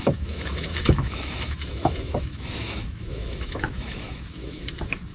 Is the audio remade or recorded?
remade